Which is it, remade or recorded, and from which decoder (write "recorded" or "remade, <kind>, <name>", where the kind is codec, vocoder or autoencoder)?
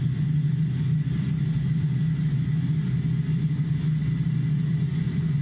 recorded